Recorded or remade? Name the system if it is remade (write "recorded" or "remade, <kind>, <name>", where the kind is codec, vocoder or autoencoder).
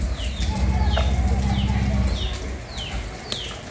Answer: recorded